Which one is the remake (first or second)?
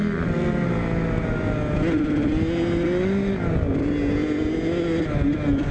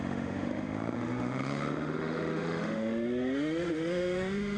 second